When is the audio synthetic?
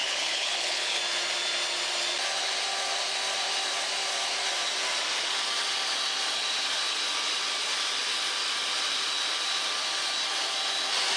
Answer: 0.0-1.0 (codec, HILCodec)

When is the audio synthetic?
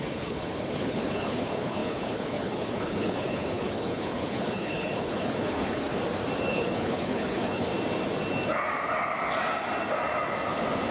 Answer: 0.0-5.9 (codec, HILCodec); 6.5-7.7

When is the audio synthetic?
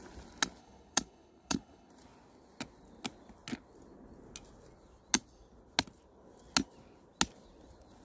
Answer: 0.6-1.9 (codec, HILCodec)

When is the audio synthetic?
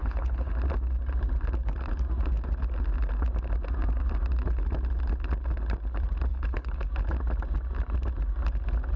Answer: 0.0-0.5 (codec, HILCodec); 6.3-6.9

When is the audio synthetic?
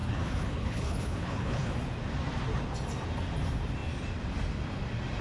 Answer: 0.0-1.7 (codec, HILCodec)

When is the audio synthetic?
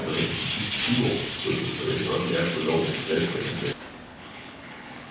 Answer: 2.9-3.6 (codec, HILCodec); 4.1-5.1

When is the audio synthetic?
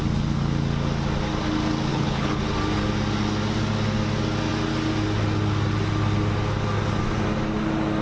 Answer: 1.9-2.4 (codec, HILCodec)